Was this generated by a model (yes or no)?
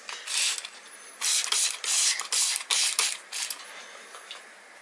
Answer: no